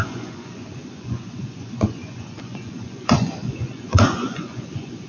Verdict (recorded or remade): remade